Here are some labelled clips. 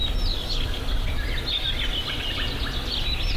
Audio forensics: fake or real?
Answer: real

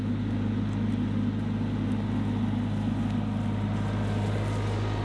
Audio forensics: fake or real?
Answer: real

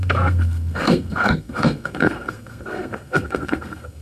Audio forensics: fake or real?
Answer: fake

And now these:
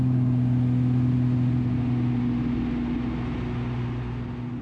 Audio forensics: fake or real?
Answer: real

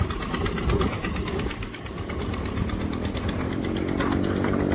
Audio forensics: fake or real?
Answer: real